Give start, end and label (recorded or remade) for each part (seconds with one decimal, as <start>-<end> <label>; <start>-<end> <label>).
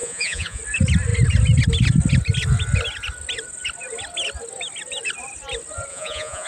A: 0.0-0.6 remade; 0.6-5.9 recorded; 5.9-6.5 remade